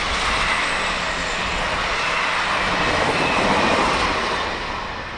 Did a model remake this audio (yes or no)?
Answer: no